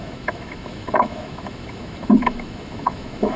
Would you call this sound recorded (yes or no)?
no